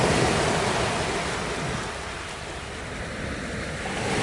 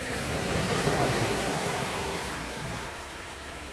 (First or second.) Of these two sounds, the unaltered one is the first